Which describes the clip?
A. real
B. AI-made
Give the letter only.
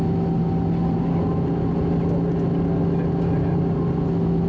A